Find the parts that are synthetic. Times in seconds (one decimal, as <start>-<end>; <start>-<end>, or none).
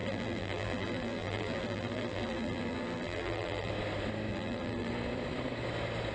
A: 0.0-3.7; 4.3-4.9